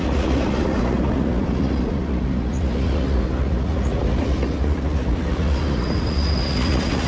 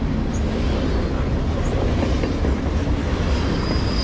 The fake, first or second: first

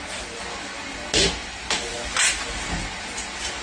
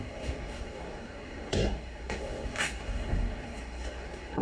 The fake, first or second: second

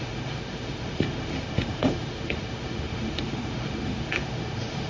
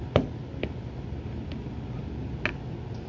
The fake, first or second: first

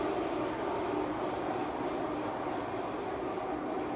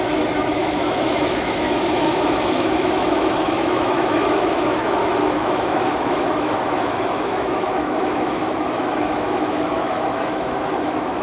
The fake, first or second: second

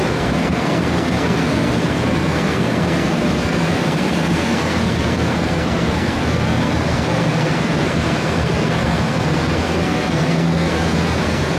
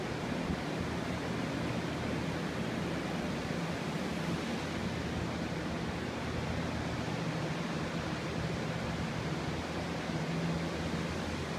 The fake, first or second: first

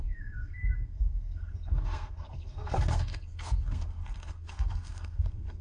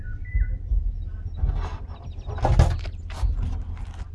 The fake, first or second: first